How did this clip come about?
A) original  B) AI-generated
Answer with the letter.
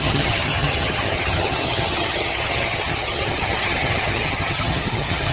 B